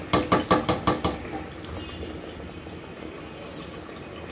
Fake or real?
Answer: real